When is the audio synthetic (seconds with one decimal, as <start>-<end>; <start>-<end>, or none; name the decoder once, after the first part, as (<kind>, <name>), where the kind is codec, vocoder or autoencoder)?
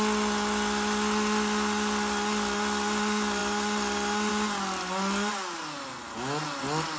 none